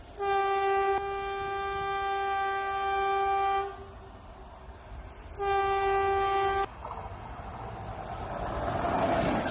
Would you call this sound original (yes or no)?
yes